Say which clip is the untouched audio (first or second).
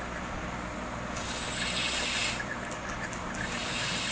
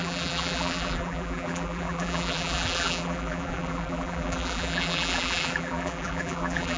first